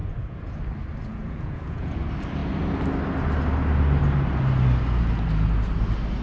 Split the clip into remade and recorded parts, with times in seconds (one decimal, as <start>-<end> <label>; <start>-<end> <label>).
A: 0.0-0.6 remade; 0.6-1.0 recorded; 1.0-2.0 remade; 2.0-6.2 recorded